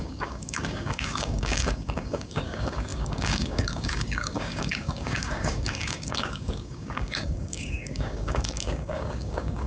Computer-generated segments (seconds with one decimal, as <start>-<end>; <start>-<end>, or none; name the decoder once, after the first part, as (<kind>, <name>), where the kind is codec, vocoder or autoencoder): 0.0-9.7 (codec, DAC)